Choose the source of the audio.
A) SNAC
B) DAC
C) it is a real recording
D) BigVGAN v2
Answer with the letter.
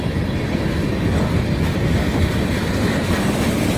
C